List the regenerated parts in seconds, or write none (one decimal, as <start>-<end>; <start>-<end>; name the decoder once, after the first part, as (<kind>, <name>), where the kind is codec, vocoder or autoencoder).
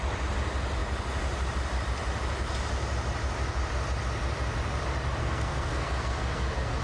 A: 5.2-6.8 (codec, SNAC)